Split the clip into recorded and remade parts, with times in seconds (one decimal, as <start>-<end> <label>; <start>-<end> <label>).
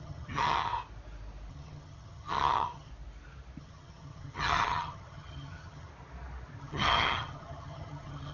0.0-0.7 remade; 0.7-1.5 recorded; 1.5-2.9 remade; 2.9-3.6 recorded; 3.6-5.9 remade; 5.9-6.6 recorded; 6.6-8.3 remade